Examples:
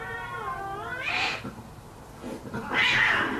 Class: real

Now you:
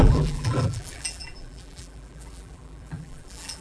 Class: fake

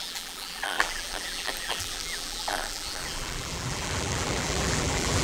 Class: fake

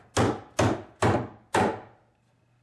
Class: real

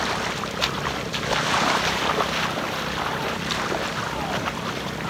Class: real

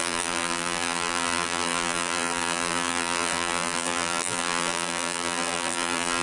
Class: fake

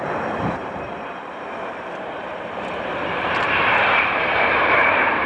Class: fake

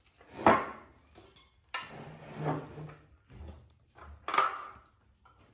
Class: real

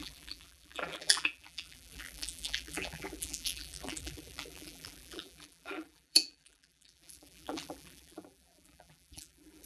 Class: fake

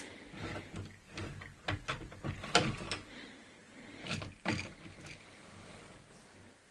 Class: real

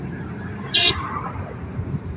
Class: fake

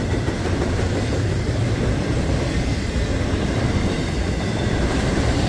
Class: fake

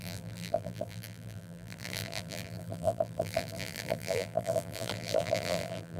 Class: fake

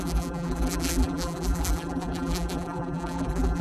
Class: fake